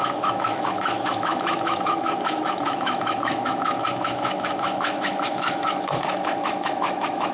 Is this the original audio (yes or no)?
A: no